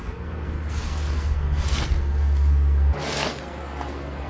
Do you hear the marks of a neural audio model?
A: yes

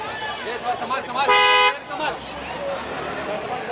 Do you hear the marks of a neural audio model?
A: no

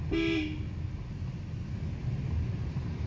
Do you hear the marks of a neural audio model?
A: no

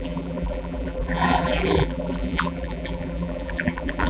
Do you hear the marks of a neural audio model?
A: yes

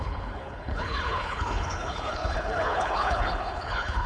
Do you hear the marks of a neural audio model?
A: yes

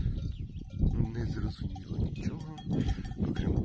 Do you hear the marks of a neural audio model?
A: no